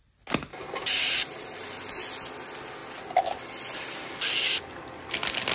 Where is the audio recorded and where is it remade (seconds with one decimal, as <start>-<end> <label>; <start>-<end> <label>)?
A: 0.0-0.5 recorded; 0.5-1.8 remade; 1.8-5.5 recorded